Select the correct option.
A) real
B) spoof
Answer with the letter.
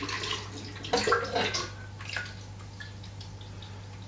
A